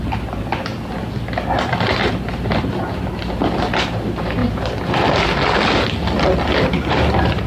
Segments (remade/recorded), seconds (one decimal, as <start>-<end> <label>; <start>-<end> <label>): 0.0-7.5 recorded